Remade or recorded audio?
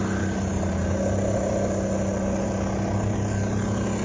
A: recorded